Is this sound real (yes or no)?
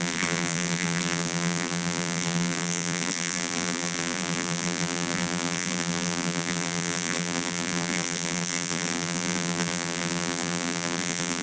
no